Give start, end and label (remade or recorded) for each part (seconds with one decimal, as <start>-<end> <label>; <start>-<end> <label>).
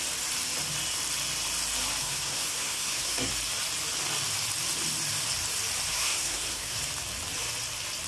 0.0-2.0 recorded; 2.0-3.3 remade; 3.3-5.9 recorded; 5.9-6.8 remade; 6.8-8.1 recorded